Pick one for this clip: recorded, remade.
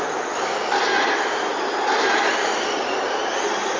recorded